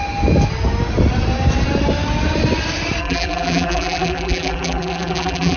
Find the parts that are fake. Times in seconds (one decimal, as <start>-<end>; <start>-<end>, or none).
3.0-5.6